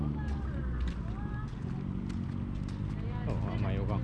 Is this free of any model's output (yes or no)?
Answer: yes